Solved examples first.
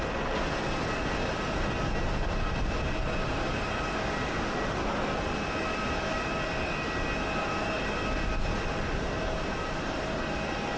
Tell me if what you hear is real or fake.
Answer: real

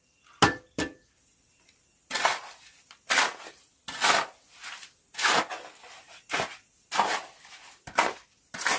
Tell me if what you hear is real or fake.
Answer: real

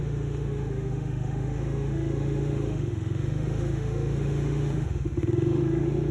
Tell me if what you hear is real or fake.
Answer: fake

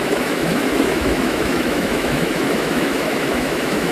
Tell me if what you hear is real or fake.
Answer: fake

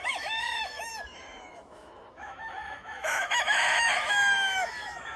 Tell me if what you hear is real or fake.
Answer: fake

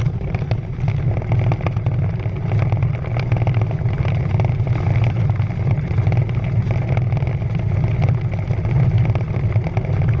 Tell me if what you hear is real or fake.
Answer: real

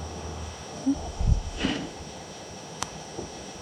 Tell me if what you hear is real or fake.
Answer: fake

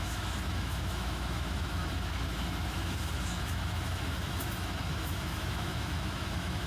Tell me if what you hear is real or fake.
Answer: fake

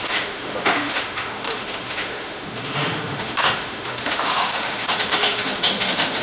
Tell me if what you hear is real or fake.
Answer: fake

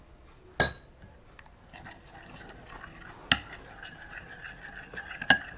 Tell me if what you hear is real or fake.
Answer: real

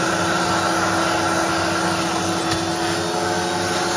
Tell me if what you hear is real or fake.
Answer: real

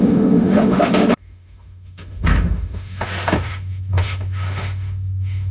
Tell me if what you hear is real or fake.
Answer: fake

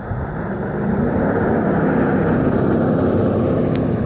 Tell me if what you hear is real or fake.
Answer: real